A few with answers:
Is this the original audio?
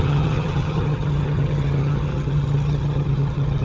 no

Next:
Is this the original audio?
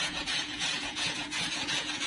no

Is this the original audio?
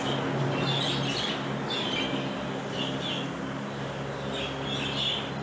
yes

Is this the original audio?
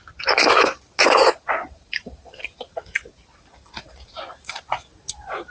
no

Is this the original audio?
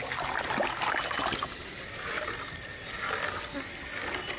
yes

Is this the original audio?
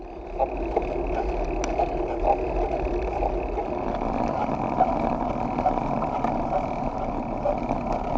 yes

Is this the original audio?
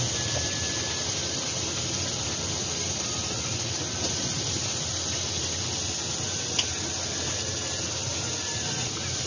yes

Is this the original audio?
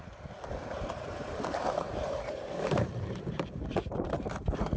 no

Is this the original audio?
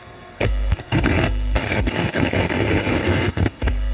no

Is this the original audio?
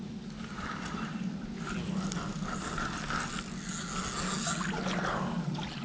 yes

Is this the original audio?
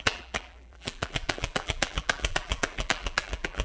no